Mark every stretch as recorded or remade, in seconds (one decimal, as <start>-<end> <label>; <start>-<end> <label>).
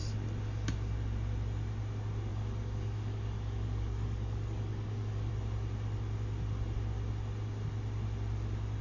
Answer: 0.0-2.3 recorded; 2.3-5.3 remade; 5.3-8.8 recorded